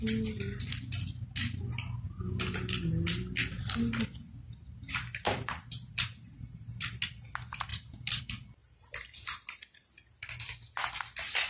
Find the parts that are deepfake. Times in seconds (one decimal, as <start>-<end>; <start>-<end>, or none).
3.1-6.8; 7.7-8.2